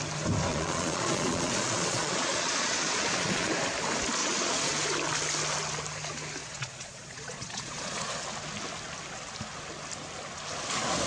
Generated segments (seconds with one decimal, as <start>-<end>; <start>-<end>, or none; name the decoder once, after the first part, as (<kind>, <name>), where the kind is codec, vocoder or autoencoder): 0.5-3.5 (vocoder, Vocos); 4.2-4.7; 6.4-8.2